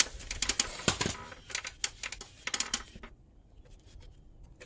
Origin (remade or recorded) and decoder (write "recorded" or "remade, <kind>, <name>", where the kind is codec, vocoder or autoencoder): recorded